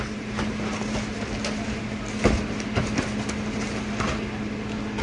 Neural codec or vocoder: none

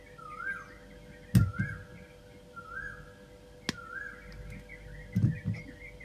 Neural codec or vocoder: none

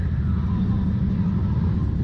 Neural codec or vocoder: none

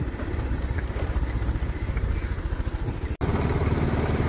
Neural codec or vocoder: none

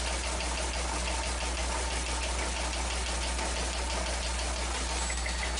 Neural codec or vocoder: none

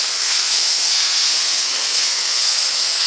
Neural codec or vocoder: codec, SNAC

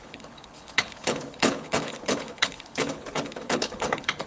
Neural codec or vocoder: codec, HILCodec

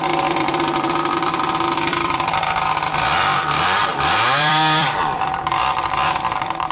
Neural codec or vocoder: vocoder, BigVGAN v2